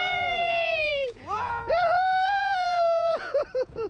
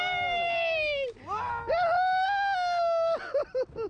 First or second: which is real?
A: second